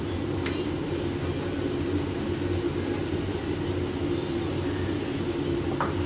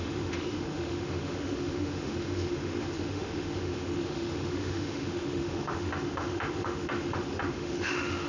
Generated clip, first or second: second